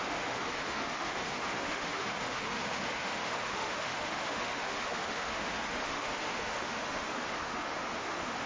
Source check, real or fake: fake